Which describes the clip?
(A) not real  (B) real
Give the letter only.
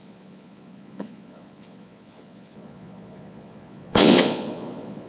A